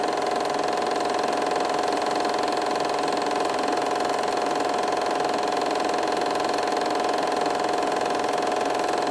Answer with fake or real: real